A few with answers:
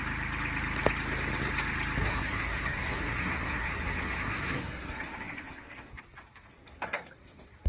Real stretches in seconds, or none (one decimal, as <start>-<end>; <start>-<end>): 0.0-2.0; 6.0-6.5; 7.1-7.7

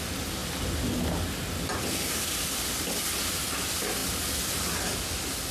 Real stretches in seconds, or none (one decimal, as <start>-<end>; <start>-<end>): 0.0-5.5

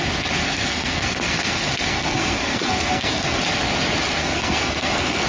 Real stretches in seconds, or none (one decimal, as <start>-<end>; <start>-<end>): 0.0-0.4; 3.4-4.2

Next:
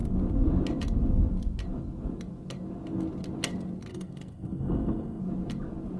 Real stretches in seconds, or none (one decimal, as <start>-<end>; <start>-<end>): 0.0-3.9; 5.2-6.0

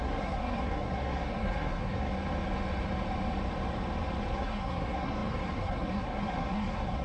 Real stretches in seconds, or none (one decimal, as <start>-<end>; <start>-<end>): 2.1-4.3

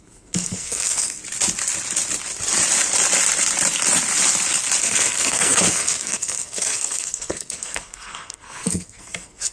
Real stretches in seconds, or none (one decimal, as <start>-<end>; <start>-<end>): 1.2-4.8

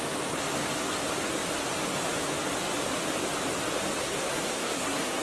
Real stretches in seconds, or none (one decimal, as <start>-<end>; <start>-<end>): 0.0-4.0